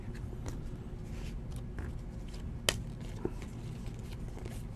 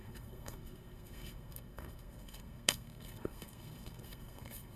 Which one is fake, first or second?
second